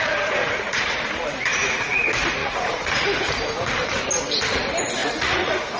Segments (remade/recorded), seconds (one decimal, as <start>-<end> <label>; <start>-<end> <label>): 0.0-2.4 recorded; 2.4-2.9 remade; 2.9-5.0 recorded; 5.0-5.8 remade